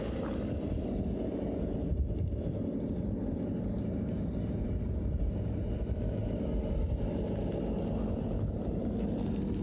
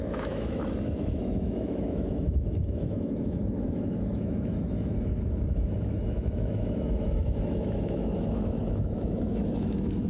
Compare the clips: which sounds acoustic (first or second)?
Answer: first